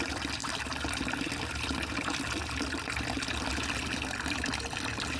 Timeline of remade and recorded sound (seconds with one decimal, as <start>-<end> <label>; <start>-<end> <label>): 0.0-5.2 remade